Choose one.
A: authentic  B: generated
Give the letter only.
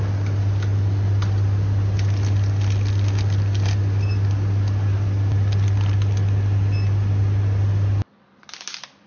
A